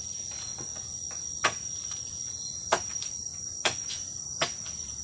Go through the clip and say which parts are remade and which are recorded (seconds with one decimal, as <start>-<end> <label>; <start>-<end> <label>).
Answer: 0.0-3.3 recorded; 3.3-4.2 remade; 4.2-5.0 recorded